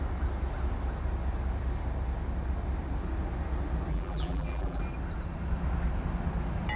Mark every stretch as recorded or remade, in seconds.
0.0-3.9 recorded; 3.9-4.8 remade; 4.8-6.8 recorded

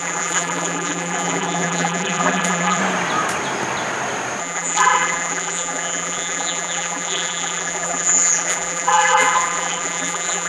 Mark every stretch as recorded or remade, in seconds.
0.0-2.8 remade; 2.8-4.4 recorded; 4.4-10.5 remade

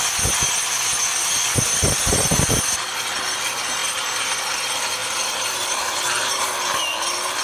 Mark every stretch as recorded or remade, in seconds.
0.0-5.0 recorded; 5.0-6.5 remade; 6.5-7.4 recorded

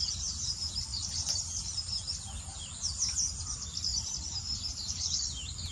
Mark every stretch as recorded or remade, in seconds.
0.0-0.9 recorded; 0.9-1.4 remade; 1.4-3.9 recorded; 3.9-5.1 remade; 5.1-5.7 recorded